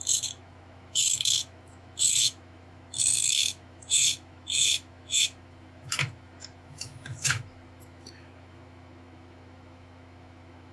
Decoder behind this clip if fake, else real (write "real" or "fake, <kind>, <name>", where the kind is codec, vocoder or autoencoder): fake, autoencoder, DAC-VAE